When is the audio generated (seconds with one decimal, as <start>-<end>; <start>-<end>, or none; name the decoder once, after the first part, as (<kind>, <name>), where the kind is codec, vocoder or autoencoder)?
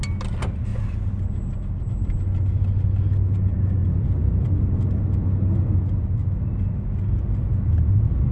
3.8-5.9 (vocoder, BigVGAN v2)